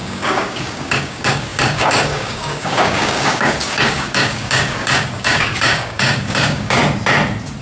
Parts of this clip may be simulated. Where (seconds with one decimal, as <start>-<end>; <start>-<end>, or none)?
0.0-6.8